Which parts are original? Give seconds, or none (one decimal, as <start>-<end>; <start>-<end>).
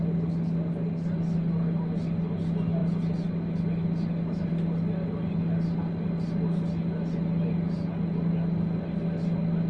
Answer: 0.0-9.7